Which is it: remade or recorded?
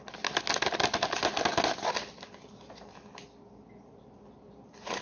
recorded